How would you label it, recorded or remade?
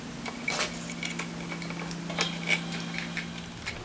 recorded